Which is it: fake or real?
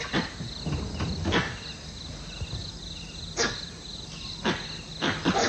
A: real